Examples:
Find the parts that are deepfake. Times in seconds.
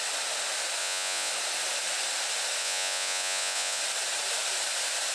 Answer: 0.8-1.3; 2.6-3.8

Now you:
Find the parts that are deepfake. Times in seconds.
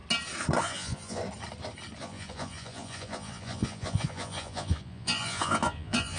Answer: 0.6-1.2; 2.0-6.2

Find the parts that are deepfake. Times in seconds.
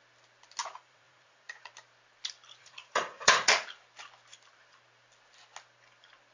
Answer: 0.6-1.7; 2.6-3.5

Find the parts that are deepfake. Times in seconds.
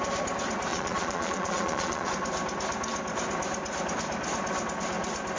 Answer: 0.7-2.1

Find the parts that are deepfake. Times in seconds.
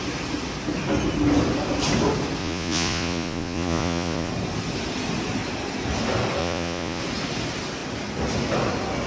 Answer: 2.4-4.3; 6.4-7.0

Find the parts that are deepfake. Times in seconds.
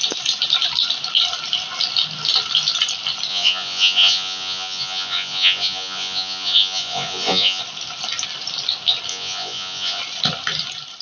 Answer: 3.3-7.6; 9.1-10.0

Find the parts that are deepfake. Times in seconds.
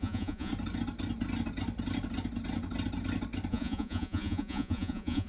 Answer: 0.0-0.5; 3.5-5.3